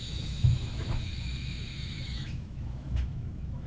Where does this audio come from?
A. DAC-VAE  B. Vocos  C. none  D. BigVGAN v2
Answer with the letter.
A